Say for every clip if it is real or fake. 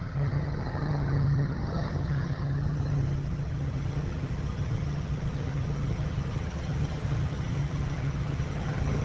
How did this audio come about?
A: fake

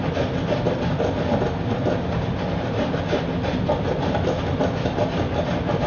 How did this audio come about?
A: real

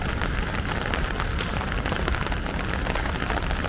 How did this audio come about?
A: real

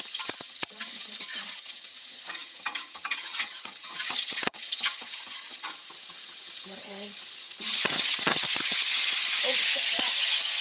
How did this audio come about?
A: fake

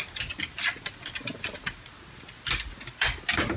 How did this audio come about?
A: real